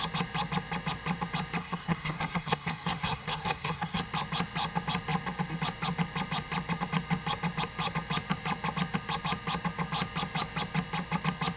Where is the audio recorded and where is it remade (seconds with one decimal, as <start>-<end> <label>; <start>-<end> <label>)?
0.0-1.6 recorded; 1.6-4.0 remade; 4.0-11.6 recorded